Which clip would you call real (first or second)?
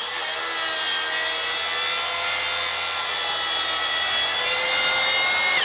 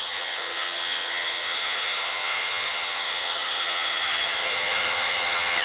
first